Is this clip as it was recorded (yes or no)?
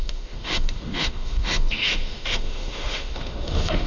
no